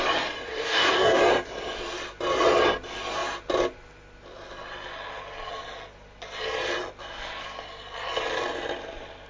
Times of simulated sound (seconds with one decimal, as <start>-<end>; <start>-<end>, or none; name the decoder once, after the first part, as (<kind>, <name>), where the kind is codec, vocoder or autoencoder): 0.5-1.2 (codec, DAC)